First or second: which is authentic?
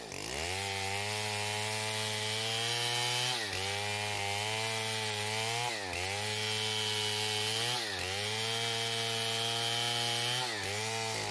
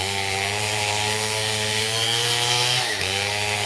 first